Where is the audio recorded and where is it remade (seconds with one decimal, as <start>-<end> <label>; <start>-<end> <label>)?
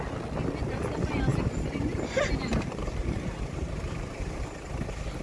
0.0-1.3 recorded; 1.3-4.4 remade; 4.4-5.2 recorded